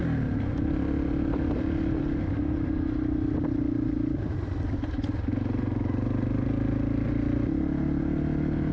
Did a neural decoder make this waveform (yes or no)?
no